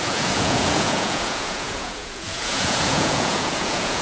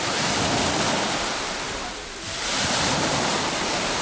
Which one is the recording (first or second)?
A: second